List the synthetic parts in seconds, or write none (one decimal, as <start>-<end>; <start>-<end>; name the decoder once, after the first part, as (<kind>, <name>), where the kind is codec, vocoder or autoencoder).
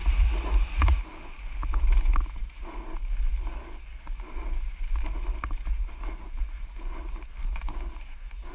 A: 0.0-1.0 (vocoder, Vocos)